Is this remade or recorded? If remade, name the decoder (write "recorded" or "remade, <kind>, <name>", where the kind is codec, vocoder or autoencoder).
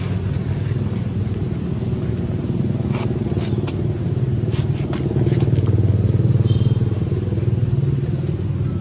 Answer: recorded